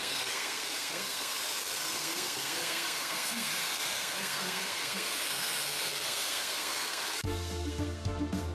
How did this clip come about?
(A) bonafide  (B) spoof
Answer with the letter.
B